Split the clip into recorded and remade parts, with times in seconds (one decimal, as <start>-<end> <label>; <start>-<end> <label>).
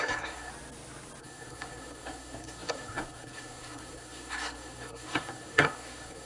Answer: 0.0-0.5 remade; 0.5-1.2 recorded; 1.2-6.3 remade